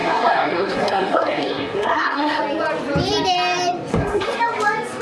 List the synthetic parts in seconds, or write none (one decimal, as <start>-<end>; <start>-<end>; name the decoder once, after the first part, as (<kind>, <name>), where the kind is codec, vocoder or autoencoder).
0.0-2.4 (codec, SNAC); 3.9-4.4